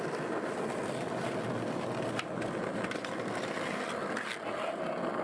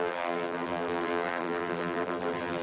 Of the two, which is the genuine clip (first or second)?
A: first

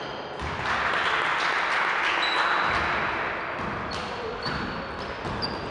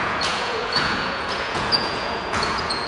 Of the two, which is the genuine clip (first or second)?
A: first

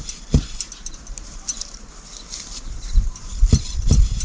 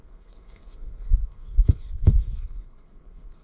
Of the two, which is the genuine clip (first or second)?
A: first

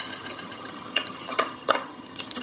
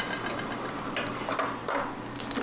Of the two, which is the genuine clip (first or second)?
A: second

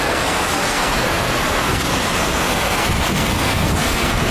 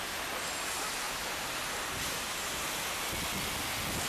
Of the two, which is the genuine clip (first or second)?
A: second